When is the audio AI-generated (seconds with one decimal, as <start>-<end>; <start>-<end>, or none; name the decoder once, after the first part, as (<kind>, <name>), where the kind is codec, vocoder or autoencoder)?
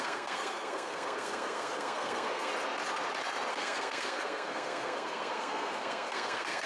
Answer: 0.0-2.5 (codec, SNAC); 3.5-6.7